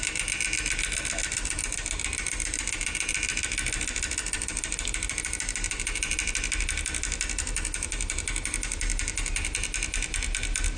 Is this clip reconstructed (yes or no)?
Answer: no